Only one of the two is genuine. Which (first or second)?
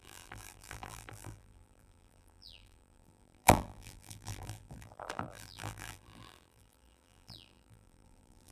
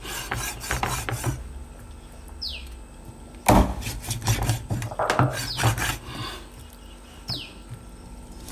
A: second